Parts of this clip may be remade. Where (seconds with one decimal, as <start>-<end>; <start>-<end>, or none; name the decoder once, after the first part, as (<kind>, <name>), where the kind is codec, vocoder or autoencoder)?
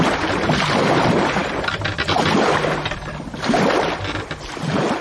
none